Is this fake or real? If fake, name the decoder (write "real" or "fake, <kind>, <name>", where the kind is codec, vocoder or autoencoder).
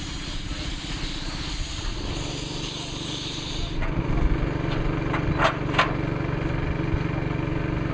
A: real